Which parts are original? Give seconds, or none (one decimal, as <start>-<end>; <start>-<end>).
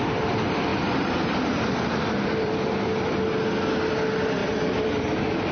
0.0-0.7; 2.5-4.4